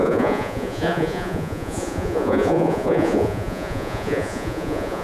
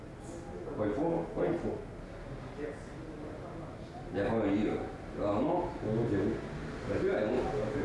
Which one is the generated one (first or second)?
first